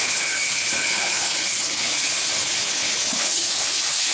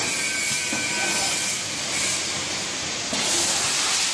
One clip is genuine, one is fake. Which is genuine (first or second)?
second